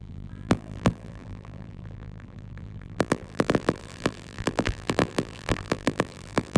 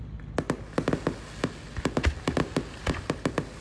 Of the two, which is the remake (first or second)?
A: first